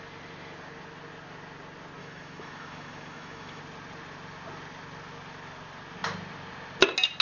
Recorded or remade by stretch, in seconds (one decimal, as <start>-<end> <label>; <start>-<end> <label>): 0.0-2.0 recorded; 2.0-3.6 remade; 3.6-7.2 recorded